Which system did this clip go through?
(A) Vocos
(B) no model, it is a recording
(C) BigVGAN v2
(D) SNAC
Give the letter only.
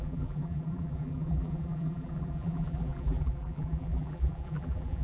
C